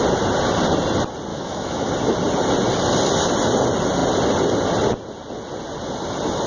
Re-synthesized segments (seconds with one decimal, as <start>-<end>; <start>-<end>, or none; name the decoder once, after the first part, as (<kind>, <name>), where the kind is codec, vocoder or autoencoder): 1.3-1.9 (autoencoder, DAC-VAE)